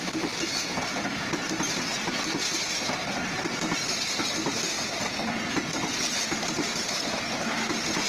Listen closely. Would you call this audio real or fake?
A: real